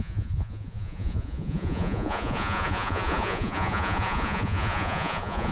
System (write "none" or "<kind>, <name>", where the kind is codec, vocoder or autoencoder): vocoder, Vocos